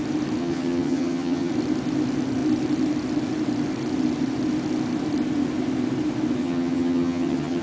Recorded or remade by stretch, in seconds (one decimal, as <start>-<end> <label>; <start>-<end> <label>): 0.0-0.4 recorded; 0.4-1.5 remade; 1.5-6.4 recorded; 6.4-7.6 remade